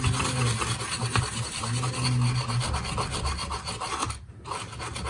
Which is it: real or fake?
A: real